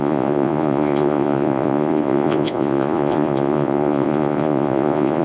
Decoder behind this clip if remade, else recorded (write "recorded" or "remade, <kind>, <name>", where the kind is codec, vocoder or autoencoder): remade, vocoder, Vocos